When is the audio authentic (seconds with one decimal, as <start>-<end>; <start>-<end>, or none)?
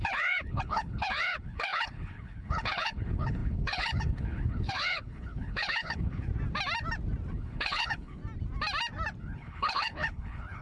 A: 6.3-7.3; 8.2-9.2